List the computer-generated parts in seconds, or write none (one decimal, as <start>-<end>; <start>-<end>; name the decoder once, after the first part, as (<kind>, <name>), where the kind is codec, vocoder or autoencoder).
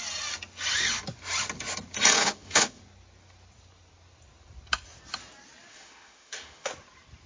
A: 2.2-2.8 (autoencoder, DAC-VAE); 5.7-6.7